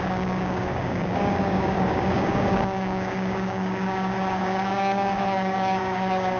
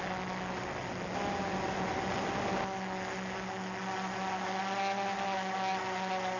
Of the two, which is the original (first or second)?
second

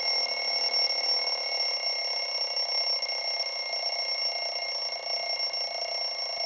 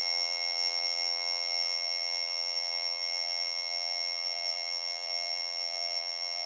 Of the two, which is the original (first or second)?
first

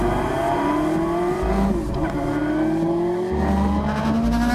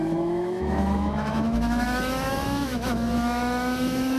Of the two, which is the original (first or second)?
first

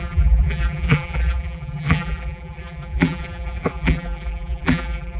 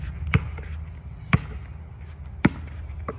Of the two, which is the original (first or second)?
second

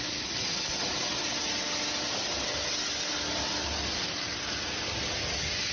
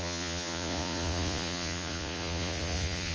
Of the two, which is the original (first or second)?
first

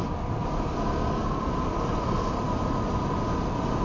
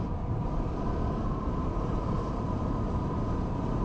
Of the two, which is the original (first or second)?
first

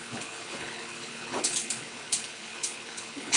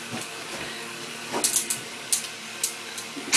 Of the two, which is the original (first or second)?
second